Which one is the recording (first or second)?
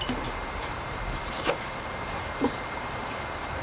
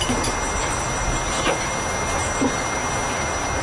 second